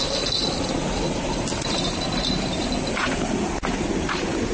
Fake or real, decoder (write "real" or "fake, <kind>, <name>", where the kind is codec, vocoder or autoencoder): real